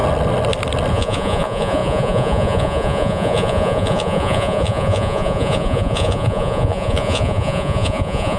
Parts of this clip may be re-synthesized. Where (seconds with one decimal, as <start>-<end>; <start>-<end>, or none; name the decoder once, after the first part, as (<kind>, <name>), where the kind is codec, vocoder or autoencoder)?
0.9-8.4 (vocoder, Vocos)